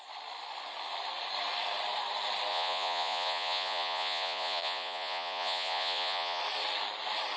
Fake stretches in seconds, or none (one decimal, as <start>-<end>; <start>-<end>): 2.5-6.4